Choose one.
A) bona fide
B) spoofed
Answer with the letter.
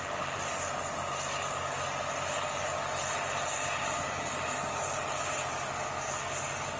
A